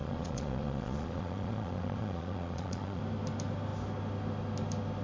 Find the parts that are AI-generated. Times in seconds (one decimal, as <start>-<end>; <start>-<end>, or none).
0.0-3.0

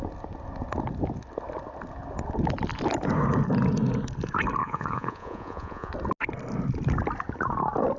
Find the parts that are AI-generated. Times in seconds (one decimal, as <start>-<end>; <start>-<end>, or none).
4.6-5.9